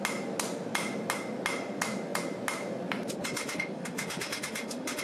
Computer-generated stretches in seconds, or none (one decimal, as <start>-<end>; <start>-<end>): 3.4-5.0